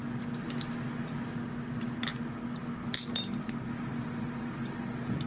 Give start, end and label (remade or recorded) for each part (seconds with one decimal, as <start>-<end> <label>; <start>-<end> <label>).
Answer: 0.0-5.3 recorded